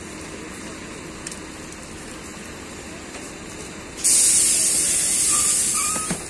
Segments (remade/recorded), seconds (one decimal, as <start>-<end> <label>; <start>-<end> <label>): 0.0-6.3 recorded